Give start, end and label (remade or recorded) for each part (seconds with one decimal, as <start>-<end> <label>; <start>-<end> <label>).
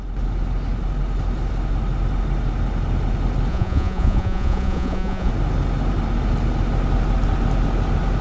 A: 0.0-3.5 recorded; 3.5-5.3 remade; 5.3-8.2 recorded